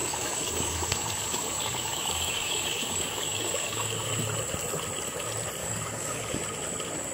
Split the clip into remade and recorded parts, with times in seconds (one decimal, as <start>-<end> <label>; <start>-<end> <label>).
0.0-4.1 remade; 4.1-5.6 recorded; 5.6-6.4 remade; 6.4-7.1 recorded